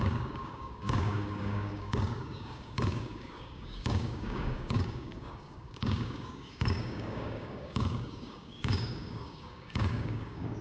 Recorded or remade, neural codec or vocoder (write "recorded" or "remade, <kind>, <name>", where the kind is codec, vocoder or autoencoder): remade, codec, DAC